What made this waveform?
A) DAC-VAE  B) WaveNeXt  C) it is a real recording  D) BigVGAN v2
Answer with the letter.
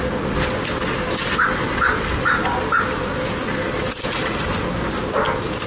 C